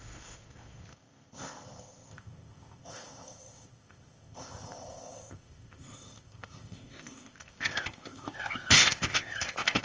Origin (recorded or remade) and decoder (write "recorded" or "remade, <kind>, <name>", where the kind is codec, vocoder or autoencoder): remade, codec, ZipCodec